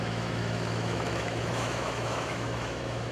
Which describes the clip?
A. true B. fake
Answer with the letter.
B